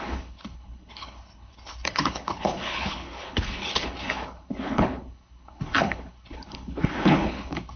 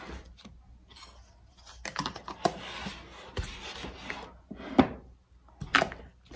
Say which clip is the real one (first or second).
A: second